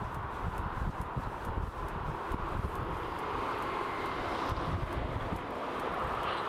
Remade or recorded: remade